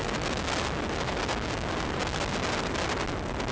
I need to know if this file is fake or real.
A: real